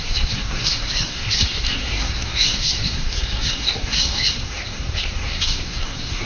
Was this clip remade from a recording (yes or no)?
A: yes